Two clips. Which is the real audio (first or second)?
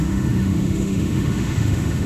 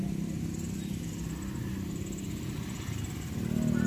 second